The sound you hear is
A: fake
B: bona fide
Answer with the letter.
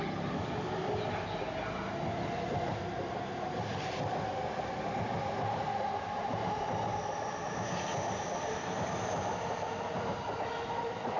B